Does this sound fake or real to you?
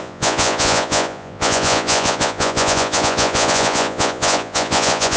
fake